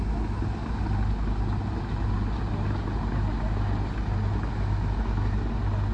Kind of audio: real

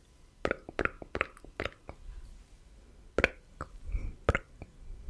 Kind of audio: real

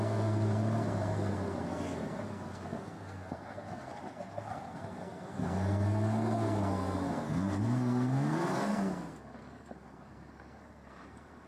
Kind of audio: fake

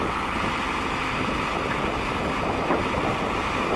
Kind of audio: real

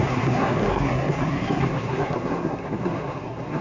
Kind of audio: fake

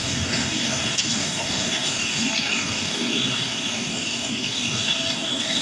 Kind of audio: fake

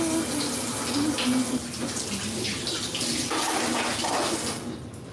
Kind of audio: real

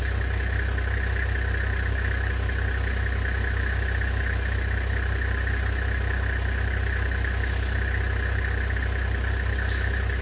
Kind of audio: real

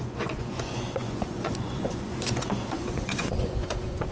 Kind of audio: fake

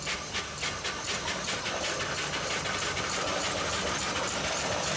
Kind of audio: real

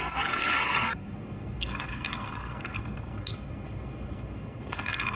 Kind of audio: fake